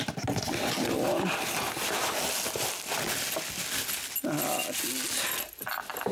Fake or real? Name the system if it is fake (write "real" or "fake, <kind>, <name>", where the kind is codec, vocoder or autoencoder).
real